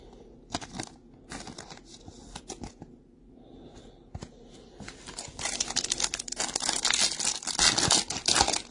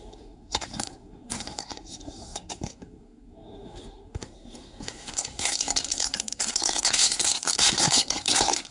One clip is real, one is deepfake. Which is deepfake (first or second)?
second